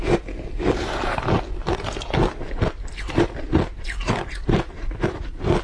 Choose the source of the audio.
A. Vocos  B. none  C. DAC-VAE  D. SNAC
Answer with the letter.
B